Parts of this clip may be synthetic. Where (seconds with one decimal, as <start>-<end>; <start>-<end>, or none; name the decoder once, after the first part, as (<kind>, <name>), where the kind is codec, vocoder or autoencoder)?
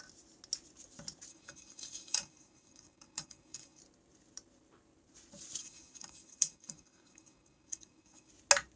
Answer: 1.3-3.8 (codec, DAC); 5.6-8.3